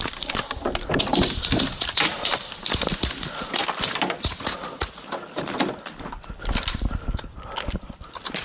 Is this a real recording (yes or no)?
no